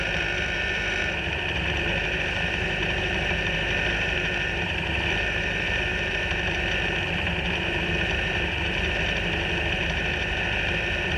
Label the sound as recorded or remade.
remade